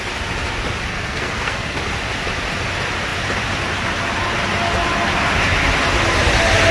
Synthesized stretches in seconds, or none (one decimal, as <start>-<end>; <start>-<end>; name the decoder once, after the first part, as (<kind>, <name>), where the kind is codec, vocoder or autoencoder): 0.9-1.8 (codec, SNAC)

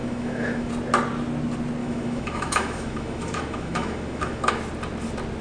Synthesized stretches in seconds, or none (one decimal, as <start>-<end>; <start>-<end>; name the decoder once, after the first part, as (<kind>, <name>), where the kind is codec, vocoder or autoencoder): 0.0-0.7 (autoencoder, DAC-VAE); 1.8-4.5

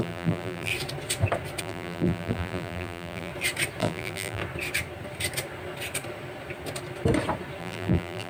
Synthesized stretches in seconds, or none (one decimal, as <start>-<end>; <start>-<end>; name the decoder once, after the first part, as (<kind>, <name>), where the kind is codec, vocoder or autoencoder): 0.0-0.7 (vocoder, BigVGAN v2); 1.6-3.3; 3.8-4.4; 7.6-8.3

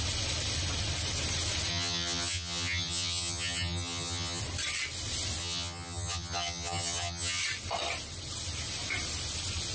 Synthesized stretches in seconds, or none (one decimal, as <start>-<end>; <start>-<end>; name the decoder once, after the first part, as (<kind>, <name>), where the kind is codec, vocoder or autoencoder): 1.7-4.4 (vocoder, HiFi-GAN); 5.4-7.4